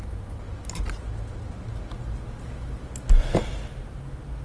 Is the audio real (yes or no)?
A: yes